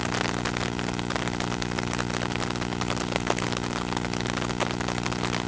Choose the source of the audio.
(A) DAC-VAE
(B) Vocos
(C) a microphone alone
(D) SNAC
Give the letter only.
C